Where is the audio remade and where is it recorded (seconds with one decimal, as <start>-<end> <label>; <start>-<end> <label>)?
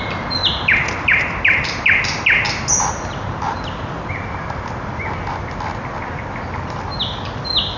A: 0.0-7.8 recorded